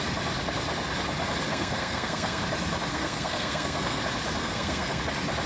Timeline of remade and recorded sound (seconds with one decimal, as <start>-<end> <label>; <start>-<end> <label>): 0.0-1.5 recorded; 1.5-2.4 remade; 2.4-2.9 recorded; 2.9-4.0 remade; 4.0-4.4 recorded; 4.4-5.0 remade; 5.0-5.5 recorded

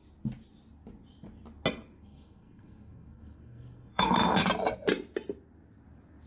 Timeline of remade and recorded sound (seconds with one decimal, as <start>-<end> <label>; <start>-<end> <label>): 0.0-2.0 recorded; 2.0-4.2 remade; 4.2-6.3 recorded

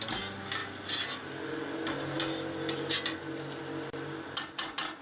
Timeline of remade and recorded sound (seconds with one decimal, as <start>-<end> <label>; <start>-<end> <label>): 0.0-5.0 recorded